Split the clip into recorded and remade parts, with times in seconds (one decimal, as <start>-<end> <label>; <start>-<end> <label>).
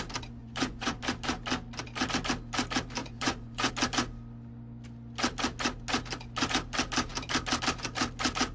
0.0-0.4 recorded; 0.4-1.0 remade; 1.0-3.0 recorded; 3.0-3.7 remade; 3.7-8.5 recorded